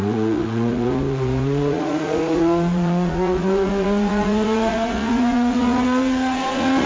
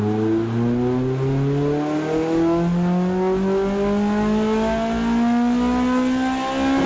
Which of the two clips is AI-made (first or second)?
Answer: first